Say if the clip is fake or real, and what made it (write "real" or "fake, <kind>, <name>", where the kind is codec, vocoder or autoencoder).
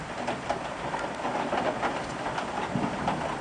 real